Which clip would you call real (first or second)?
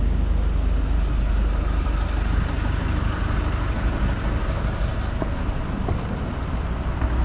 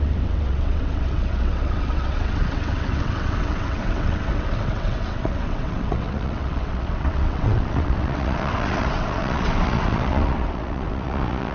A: first